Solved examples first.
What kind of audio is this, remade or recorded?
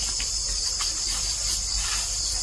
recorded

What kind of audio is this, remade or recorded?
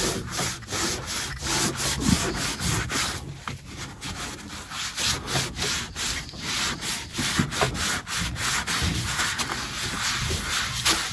recorded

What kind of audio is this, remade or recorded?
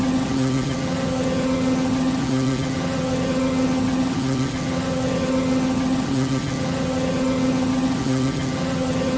remade